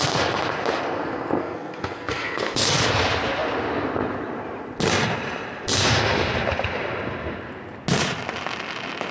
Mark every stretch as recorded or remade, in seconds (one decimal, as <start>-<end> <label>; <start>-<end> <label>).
0.0-1.4 recorded; 1.4-2.8 remade; 2.8-9.1 recorded